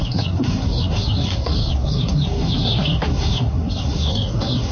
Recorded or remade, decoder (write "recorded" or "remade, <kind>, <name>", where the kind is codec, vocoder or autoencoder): remade, codec, SNAC